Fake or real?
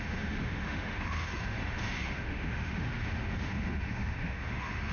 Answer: fake